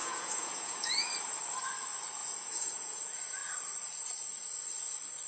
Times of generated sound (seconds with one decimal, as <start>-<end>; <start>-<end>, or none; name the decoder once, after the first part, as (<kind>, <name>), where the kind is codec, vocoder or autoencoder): 0.0-1.1 (vocoder, Vocos); 2.2-3.0